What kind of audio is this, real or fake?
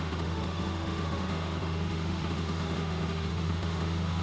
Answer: fake